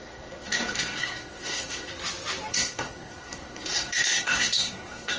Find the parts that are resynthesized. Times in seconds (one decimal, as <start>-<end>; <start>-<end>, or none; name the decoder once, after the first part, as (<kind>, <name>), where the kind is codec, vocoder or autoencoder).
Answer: 0.0-1.9 (codec, SNAC); 2.5-5.2